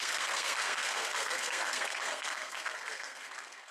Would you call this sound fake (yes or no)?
yes